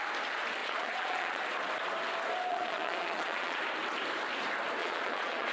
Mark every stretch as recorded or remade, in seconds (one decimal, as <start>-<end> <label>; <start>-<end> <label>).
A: 0.0-0.6 recorded; 0.6-1.4 remade; 1.4-2.5 recorded; 2.5-3.6 remade; 3.6-4.8 recorded; 4.8-5.5 remade